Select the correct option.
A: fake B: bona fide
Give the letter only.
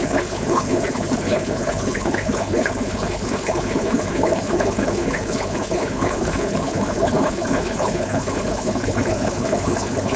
A